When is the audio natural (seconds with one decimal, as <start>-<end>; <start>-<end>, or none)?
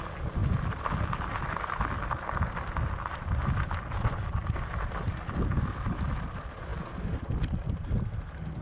0.0-8.6